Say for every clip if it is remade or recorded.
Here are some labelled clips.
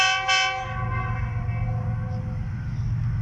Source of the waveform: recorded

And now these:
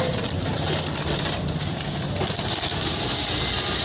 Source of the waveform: recorded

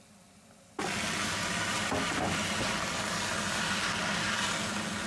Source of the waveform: recorded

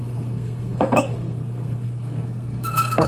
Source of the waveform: remade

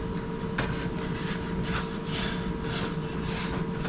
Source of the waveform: recorded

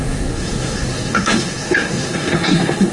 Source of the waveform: remade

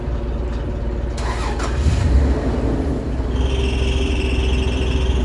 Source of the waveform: recorded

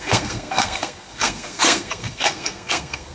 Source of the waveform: remade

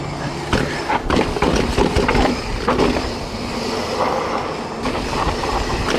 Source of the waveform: recorded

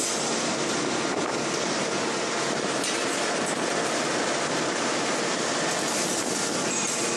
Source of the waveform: recorded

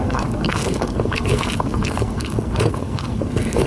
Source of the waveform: remade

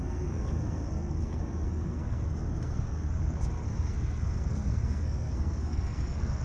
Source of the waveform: remade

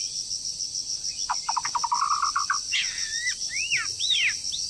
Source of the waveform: recorded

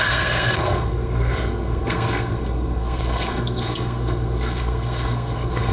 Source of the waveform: remade